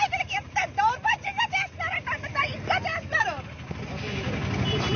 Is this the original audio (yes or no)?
yes